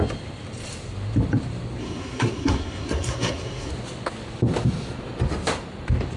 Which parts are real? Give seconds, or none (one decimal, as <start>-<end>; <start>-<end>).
0.0-1.8; 3.7-6.2